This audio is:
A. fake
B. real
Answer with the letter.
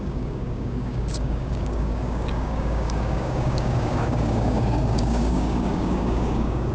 A